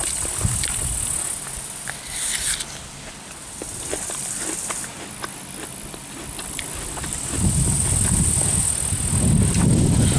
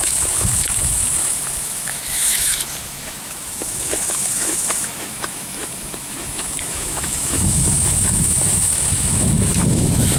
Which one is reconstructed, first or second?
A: second